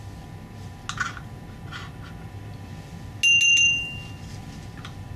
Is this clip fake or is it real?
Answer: real